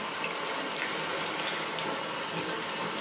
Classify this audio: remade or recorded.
recorded